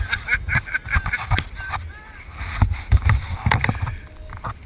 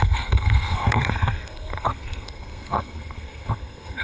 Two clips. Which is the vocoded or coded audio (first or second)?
second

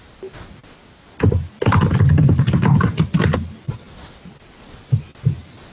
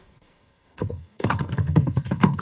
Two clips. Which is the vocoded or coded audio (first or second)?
second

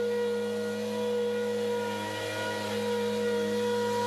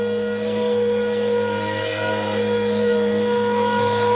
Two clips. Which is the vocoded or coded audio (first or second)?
second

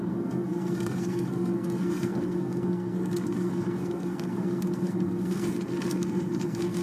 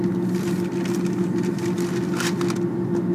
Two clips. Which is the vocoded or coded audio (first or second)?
first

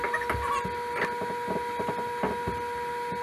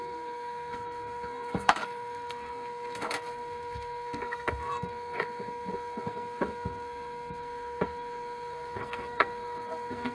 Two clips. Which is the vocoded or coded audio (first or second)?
second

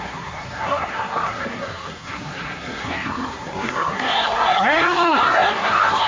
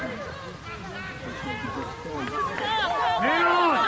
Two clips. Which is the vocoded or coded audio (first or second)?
first